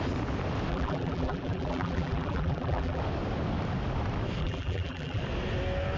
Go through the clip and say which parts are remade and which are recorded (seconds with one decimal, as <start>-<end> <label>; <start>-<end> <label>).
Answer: 0.0-0.7 recorded; 0.7-3.0 remade; 3.0-4.4 recorded; 4.4-5.2 remade; 5.2-6.0 recorded